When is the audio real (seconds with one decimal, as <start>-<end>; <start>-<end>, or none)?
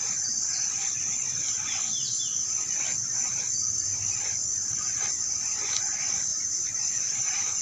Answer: 0.0-6.3